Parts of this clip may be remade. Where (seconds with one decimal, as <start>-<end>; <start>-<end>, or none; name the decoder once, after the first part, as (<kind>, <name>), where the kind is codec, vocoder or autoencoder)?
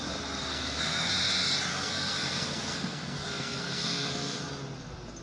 0.5-1.1 (codec, SNAC); 1.7-4.5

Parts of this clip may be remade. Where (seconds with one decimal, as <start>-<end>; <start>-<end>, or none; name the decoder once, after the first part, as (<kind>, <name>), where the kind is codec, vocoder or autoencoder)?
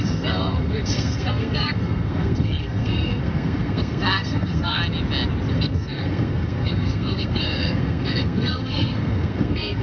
0.0-4.8 (codec, SNAC); 5.5-9.8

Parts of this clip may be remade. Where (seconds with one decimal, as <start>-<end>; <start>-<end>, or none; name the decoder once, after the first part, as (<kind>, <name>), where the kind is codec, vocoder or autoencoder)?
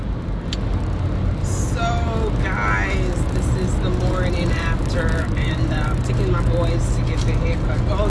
none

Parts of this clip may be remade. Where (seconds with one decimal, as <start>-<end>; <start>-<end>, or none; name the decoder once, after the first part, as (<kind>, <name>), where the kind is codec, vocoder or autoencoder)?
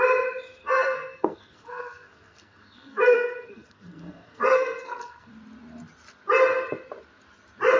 0.6-5.3 (codec, SNAC)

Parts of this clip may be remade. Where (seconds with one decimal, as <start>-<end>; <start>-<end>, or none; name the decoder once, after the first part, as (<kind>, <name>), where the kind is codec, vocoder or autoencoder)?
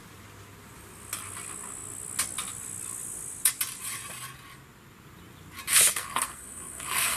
5.7-7.2 (codec, SNAC)